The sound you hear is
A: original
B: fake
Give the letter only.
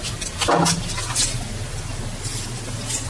A